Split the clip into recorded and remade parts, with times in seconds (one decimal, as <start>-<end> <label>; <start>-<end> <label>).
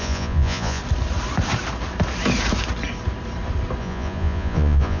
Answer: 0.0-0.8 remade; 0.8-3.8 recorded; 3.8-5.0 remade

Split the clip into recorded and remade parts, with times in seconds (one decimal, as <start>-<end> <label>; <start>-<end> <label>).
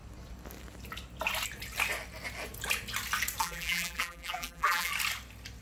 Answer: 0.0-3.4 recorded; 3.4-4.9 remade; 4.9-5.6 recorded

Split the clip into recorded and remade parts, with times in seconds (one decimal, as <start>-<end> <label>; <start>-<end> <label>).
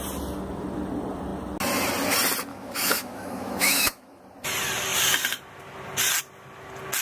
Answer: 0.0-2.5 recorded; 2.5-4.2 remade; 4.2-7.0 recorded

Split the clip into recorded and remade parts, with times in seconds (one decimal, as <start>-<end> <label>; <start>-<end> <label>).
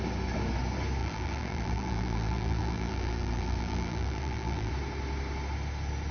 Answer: 0.0-1.0 recorded; 1.0-4.7 remade; 4.7-6.1 recorded